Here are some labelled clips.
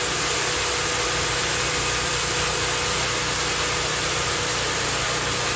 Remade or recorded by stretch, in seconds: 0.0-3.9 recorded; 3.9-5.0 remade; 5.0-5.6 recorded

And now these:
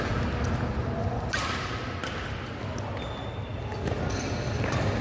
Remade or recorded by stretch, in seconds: 0.0-5.0 recorded

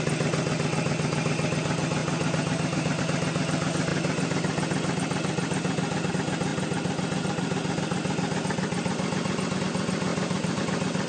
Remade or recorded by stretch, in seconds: 0.0-2.0 recorded; 2.0-3.0 remade; 3.0-10.1 recorded; 10.1-10.6 remade; 10.6-11.1 recorded

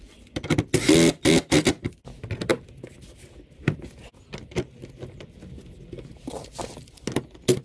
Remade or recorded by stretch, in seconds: 0.0-7.6 recorded

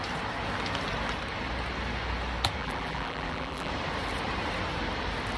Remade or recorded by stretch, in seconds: 0.0-2.6 recorded; 2.6-3.7 remade; 3.7-5.4 recorded